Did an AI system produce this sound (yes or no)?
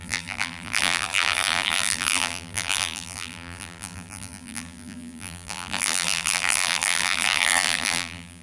yes